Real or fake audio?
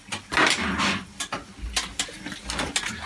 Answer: real